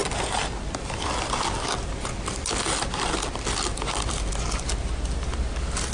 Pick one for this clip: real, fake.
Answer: real